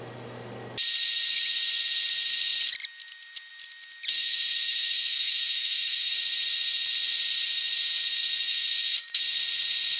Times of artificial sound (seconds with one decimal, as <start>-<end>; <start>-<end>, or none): 4.2-6.1; 8.5-9.2